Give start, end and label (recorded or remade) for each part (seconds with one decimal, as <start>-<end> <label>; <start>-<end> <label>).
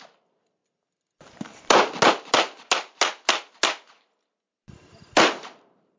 0.0-6.0 recorded